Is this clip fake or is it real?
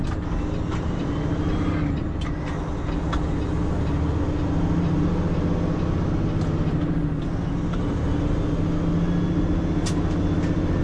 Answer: real